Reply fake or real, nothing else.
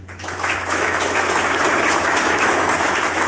fake